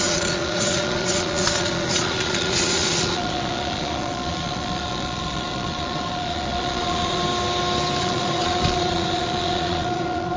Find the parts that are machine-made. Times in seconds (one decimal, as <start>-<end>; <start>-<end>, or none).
0.0-7.2; 8.0-10.4

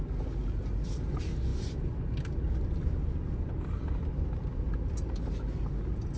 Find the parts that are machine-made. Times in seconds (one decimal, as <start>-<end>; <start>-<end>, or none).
none